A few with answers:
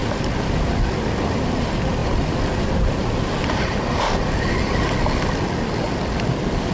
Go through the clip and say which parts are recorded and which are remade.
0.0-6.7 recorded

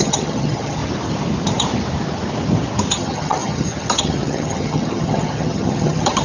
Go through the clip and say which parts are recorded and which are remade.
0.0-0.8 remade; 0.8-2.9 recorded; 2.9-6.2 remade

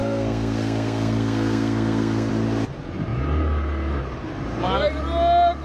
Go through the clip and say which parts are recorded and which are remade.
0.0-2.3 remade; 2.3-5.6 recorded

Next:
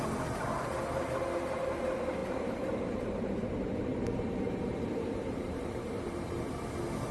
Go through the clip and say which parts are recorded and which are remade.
0.0-2.2 recorded; 2.2-6.5 remade; 6.5-7.1 recorded

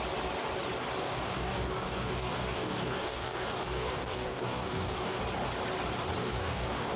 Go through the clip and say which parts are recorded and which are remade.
0.0-1.0 recorded; 1.0-5.2 remade; 5.2-6.2 recorded; 6.2-7.0 remade

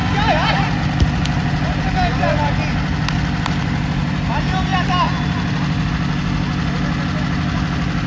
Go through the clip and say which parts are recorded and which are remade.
0.0-8.1 recorded

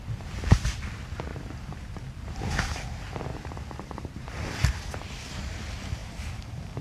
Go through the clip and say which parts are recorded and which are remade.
0.0-1.3 recorded; 1.3-2.4 remade; 2.4-3.3 recorded; 3.3-4.3 remade; 4.3-6.0 recorded; 6.0-6.8 remade